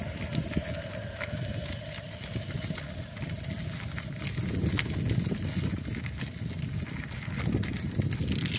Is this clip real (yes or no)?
yes